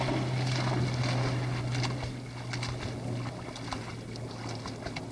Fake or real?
real